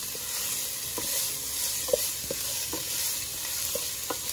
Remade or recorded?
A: recorded